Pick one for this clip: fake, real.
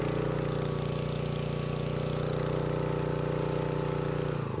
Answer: real